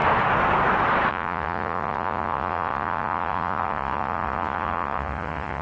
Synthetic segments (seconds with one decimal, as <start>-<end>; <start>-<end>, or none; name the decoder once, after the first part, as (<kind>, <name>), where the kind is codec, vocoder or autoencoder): 1.1-5.6 (vocoder, Vocos)